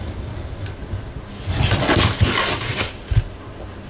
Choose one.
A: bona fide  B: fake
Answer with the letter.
A